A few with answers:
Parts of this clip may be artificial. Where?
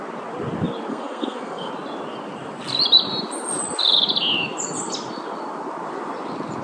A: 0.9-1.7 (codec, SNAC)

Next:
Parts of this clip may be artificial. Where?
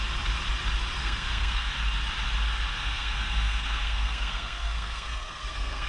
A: 1.0-1.7 (codec, SNAC); 2.7-5.9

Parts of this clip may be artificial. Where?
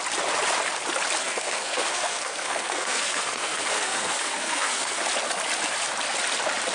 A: 1.2-5.0 (codec, SNAC)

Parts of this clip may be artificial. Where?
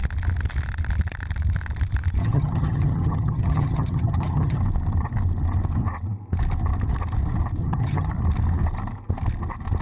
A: 2.2-4.6 (vocoder, HiFi-GAN); 7.6-8.1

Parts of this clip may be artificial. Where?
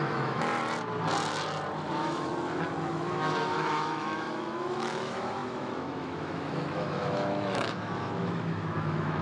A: 0.0-0.5 (autoencoder, DAC-VAE); 1.9-2.3; 2.9-9.2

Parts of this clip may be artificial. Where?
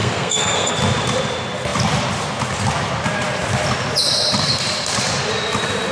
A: 0.0-0.7 (codec, SNAC)